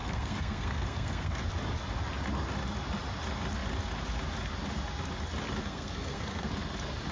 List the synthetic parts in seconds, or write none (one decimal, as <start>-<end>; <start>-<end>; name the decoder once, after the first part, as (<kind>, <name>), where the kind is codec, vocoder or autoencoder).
0.0-1.5 (codec, SNAC); 5.6-6.5